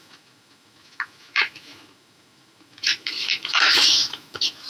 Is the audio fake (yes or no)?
yes